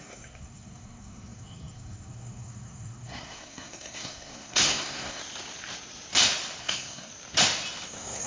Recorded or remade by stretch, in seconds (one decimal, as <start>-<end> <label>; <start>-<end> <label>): 0.0-5.2 remade; 5.2-6.6 recorded; 6.6-7.1 remade; 7.1-7.9 recorded; 7.9-8.3 remade